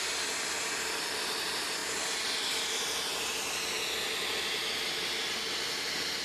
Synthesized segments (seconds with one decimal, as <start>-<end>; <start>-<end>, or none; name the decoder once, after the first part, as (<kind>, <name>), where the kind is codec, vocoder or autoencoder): none